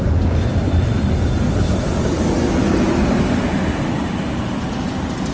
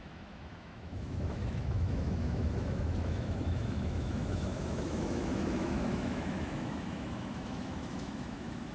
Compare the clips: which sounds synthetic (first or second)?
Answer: second